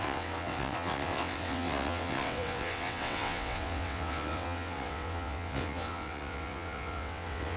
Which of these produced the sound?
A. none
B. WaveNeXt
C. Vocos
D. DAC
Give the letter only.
B